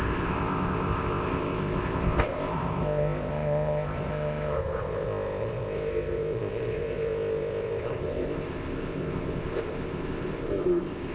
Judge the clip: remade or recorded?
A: remade